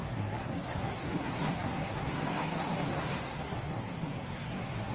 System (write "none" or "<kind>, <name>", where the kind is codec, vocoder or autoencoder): codec, SNAC